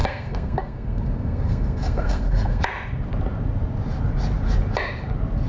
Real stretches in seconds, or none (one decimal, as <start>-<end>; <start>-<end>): 2.6-5.5